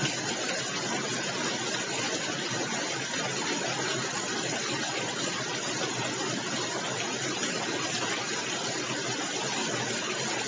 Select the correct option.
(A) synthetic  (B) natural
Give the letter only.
B